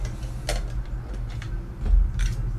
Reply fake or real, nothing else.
real